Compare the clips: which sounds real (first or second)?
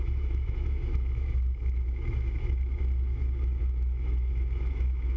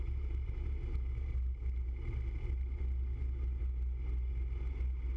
second